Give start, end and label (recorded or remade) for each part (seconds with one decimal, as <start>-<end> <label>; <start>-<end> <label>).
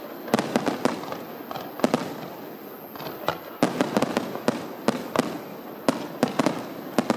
0.0-7.2 recorded